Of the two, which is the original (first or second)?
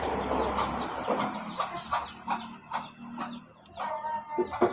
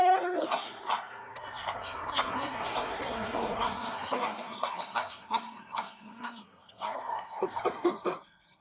first